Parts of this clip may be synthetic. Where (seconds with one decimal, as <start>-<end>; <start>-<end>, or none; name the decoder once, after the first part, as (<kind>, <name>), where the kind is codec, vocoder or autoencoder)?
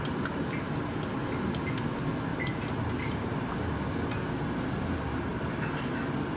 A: 2.3-3.5 (vocoder, BigVGAN v2)